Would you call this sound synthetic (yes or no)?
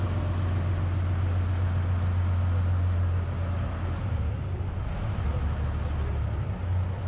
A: no